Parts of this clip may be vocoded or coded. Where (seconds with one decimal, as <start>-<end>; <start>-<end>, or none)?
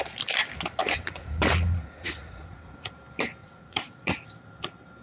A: 0.8-2.9; 3.4-4.0